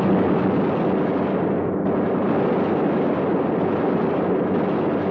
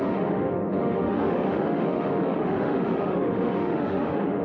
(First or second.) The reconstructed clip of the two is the second